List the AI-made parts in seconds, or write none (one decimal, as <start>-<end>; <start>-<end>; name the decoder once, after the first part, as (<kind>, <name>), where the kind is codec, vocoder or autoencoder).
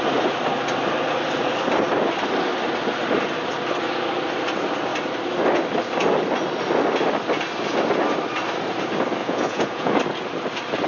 9.2-10.0 (vocoder, Vocos)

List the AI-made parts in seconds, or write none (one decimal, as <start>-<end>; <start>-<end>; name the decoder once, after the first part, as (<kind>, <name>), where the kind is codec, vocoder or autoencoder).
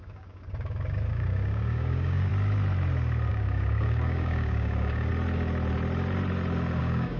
0.0-2.3 (codec, DAC); 3.3-5.1; 6.8-7.2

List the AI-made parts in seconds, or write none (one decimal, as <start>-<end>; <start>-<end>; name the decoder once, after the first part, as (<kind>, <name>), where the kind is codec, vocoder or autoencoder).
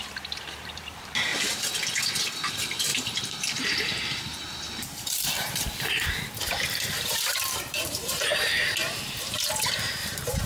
0.0-1.3 (vocoder, BigVGAN v2); 2.5-10.5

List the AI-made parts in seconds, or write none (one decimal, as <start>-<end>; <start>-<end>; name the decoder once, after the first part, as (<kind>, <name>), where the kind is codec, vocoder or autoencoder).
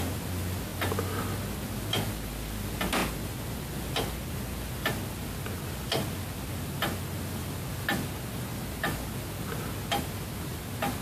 none